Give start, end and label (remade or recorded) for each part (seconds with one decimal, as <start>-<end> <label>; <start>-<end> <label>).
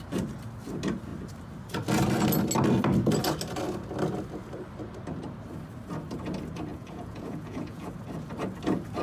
0.0-6.7 recorded; 6.7-7.9 remade; 7.9-9.0 recorded